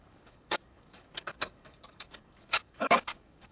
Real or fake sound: fake